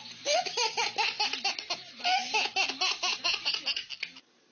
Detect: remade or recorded recorded